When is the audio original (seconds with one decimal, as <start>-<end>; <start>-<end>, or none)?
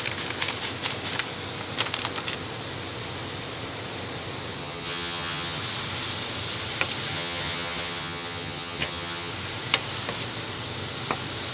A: 0.0-4.6; 5.6-7.1; 9.3-11.5